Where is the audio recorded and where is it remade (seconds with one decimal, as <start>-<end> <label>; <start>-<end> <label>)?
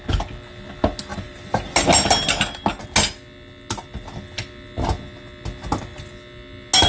0.0-1.1 recorded; 1.1-1.7 remade; 1.7-6.9 recorded